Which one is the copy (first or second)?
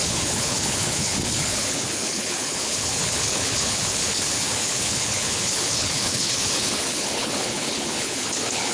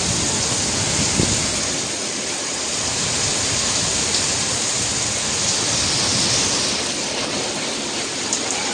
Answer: first